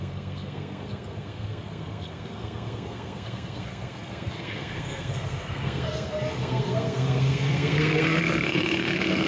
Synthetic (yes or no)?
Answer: yes